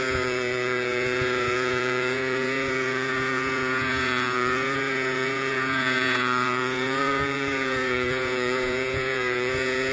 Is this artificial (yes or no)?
yes